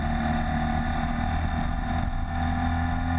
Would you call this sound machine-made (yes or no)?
no